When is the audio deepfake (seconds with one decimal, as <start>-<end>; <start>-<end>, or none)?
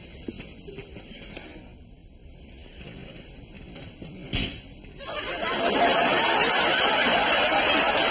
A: none